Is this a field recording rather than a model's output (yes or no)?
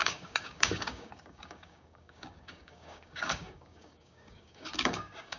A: no